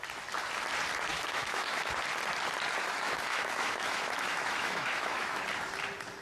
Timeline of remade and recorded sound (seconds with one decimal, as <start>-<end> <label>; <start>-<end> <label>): 0.0-1.1 recorded; 1.1-1.9 remade; 1.9-2.8 recorded; 2.8-5.4 remade; 5.4-6.2 recorded